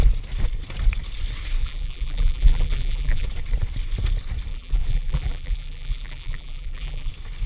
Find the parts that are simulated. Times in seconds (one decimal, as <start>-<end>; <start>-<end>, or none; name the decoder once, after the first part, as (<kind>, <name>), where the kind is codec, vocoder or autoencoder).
1.6-3.3 (vocoder, BigVGAN v2); 4.5-7.1